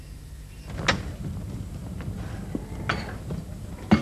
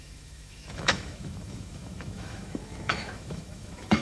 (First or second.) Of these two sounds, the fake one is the second